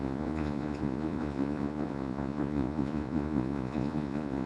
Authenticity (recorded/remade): remade